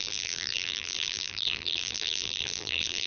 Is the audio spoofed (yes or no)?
yes